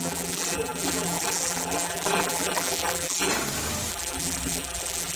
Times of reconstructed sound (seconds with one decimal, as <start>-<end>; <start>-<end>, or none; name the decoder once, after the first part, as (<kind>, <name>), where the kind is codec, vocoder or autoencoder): 0.0-3.3 (vocoder, BigVGAN v2); 3.9-5.2